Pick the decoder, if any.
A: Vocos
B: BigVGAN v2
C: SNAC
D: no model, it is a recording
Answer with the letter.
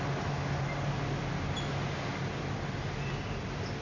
D